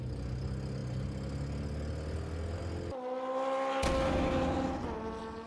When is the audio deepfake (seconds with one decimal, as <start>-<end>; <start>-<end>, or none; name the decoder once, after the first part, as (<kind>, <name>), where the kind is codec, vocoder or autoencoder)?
none